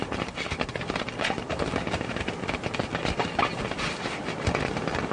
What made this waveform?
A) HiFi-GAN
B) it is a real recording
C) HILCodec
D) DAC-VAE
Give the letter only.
B